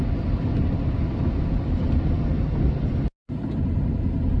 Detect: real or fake real